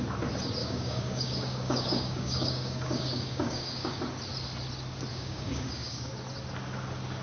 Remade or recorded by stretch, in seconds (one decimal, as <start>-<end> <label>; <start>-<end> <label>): 0.0-0.6 recorded; 0.6-4.0 remade; 4.0-5.1 recorded; 5.1-6.1 remade; 6.1-7.2 recorded